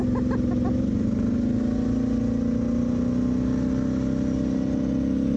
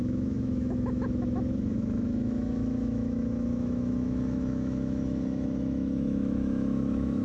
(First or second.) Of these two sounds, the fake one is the second